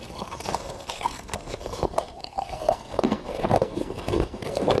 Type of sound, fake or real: fake